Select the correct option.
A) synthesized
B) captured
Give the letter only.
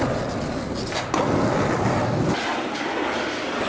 B